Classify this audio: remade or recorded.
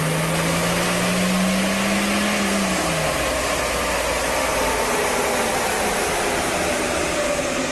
recorded